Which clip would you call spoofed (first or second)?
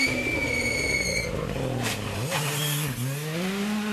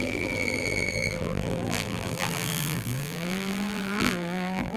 second